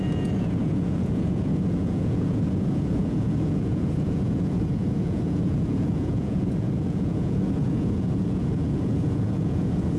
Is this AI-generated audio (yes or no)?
yes